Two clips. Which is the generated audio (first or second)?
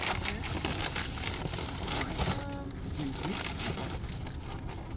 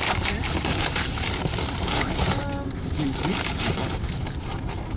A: second